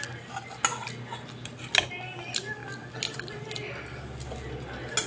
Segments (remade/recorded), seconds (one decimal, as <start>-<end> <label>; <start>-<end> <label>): 0.0-5.1 recorded